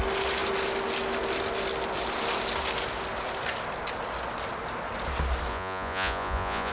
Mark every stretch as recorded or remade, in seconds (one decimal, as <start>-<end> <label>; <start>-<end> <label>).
0.0-5.5 recorded; 5.5-6.7 remade